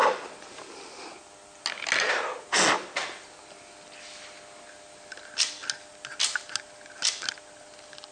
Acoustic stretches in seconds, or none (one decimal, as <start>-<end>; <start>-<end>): 0.0-8.1